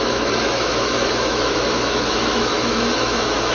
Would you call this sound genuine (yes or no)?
no